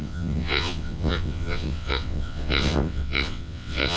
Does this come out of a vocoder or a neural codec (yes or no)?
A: yes